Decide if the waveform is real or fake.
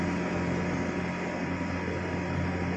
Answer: real